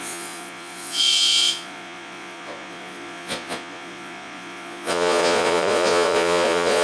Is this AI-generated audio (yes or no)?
yes